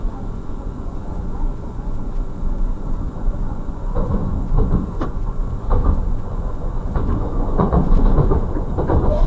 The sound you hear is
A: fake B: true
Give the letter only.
A